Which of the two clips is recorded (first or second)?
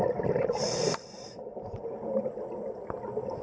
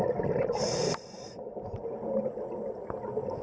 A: second